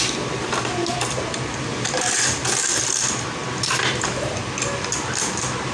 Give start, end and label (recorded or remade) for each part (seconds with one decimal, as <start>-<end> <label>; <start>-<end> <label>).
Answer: 0.0-1.7 recorded; 1.7-2.5 remade; 2.5-3.4 recorded; 3.4-5.7 remade